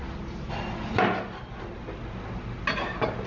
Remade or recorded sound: recorded